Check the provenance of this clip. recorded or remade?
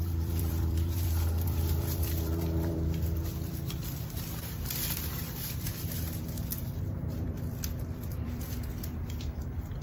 remade